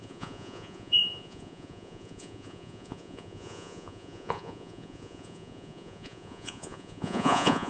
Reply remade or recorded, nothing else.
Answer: remade